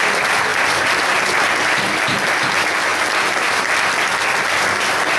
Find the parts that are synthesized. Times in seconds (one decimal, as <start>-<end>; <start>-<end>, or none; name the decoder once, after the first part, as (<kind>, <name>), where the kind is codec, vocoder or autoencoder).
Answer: 0.5-2.0 (vocoder, BigVGAN v2); 2.9-4.1